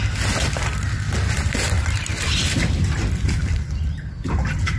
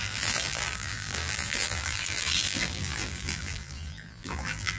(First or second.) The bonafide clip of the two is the first